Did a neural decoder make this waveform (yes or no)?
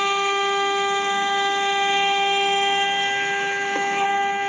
yes